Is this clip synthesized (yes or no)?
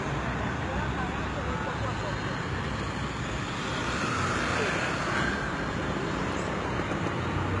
no